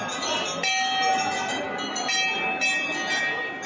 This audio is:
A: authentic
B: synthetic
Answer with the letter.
A